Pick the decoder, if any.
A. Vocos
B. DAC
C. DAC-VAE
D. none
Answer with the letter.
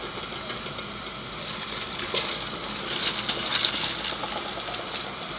D